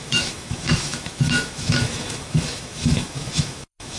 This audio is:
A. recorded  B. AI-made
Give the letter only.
B